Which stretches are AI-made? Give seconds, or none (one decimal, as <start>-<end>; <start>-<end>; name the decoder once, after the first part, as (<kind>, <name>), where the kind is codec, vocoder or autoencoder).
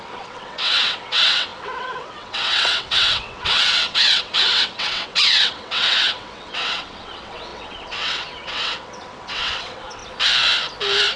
0.0-10.0 (vocoder, WaveNeXt)